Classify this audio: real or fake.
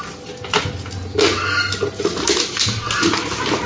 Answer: real